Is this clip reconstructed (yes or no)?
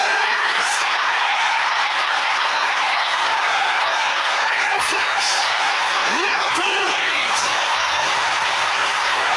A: yes